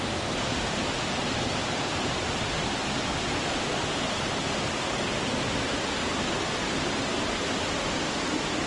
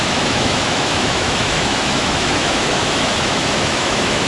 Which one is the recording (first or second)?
first